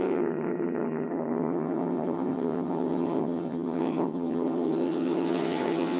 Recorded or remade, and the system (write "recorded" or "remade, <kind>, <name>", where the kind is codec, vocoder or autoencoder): remade, vocoder, HiFi-GAN